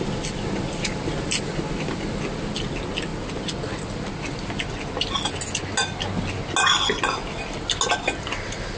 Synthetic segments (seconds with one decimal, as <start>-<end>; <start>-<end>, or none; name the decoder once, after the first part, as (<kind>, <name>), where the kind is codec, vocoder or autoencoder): none